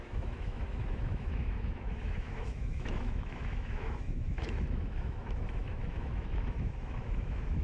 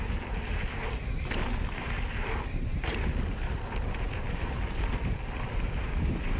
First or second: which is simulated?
first